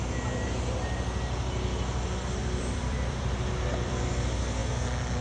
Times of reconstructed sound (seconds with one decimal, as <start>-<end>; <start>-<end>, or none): 2.4-4.1